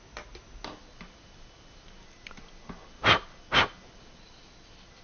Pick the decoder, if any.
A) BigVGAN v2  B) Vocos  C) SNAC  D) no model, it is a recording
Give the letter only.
D